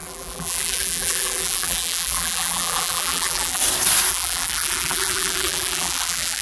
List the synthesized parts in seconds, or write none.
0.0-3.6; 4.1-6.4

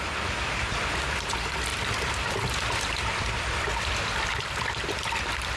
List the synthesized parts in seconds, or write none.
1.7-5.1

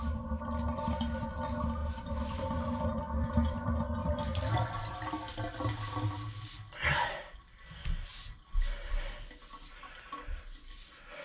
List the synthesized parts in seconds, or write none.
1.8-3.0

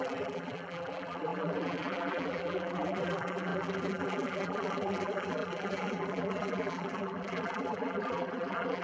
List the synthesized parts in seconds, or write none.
0.0-8.8

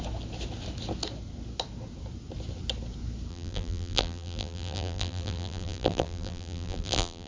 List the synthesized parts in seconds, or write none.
3.3-7.3

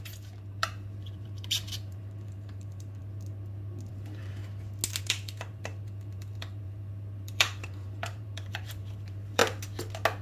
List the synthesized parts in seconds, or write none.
0.0-3.0; 3.9-4.4; 5.0-9.4